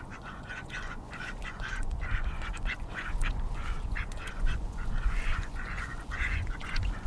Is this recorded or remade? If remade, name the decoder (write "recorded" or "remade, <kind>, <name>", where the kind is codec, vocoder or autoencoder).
remade, vocoder, Vocos